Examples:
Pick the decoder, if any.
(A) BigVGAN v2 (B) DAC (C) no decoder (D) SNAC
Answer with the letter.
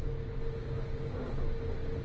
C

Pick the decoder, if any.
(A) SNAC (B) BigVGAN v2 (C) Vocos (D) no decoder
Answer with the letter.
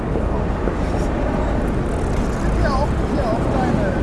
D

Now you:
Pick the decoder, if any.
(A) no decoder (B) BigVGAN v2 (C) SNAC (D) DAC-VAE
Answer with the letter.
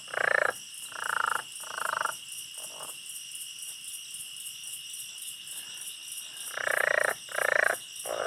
A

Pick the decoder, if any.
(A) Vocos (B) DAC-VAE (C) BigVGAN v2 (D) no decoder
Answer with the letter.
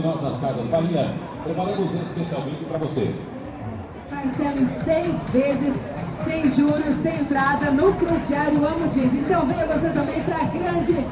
C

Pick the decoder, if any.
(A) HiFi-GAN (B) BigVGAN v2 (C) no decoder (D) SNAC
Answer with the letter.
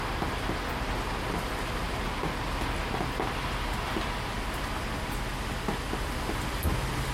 C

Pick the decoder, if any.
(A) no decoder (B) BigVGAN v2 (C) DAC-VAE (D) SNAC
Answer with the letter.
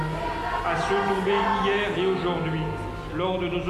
A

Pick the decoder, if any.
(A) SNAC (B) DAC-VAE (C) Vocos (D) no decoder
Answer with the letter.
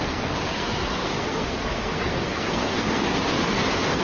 A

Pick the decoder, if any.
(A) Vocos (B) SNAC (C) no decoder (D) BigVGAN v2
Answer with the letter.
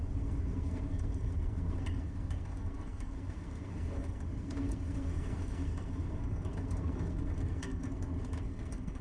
B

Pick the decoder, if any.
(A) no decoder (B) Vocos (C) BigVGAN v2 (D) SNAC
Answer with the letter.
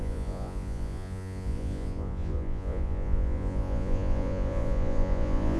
B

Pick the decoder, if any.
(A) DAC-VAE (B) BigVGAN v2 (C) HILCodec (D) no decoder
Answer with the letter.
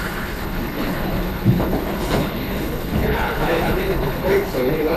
C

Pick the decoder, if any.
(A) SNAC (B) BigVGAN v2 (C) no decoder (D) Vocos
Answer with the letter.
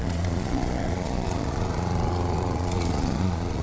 D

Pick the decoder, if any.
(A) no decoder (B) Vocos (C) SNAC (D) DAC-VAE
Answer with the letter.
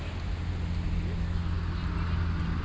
A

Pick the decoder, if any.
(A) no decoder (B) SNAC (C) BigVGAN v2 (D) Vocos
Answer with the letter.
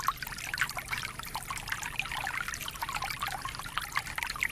A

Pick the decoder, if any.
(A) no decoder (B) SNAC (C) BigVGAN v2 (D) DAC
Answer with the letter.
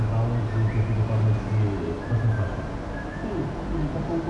A